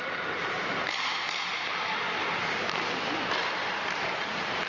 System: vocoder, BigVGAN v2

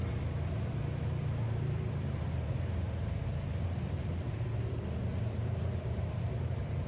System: vocoder, BigVGAN v2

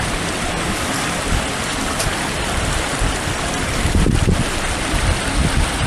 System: none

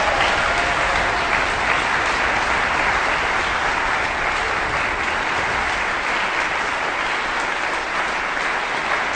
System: none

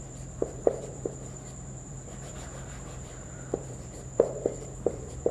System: vocoder, BigVGAN v2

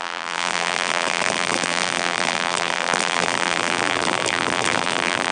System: vocoder, BigVGAN v2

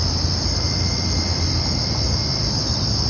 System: none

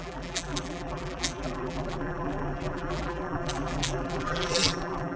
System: vocoder, BigVGAN v2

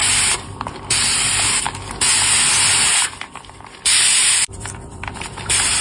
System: vocoder, BigVGAN v2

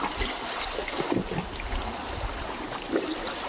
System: none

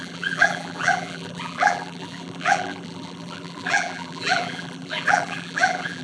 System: vocoder, BigVGAN v2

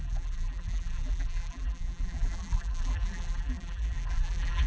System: vocoder, BigVGAN v2